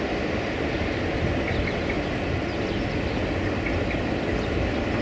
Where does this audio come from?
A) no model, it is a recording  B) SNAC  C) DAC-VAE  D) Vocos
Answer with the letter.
A